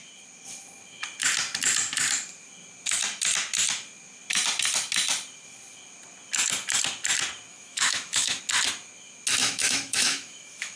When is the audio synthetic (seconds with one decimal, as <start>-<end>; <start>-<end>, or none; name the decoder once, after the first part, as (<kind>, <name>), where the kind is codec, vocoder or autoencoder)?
7.5-8.4 (autoencoder, DAC-VAE); 9.4-10.8